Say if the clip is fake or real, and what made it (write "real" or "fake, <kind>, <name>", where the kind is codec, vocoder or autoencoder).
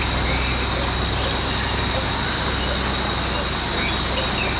real